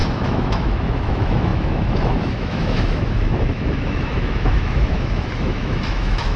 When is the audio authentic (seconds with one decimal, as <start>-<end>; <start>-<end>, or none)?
none